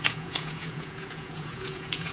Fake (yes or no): yes